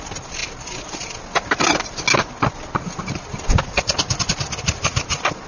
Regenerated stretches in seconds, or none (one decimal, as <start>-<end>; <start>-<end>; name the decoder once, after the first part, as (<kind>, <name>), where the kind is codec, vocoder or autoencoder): none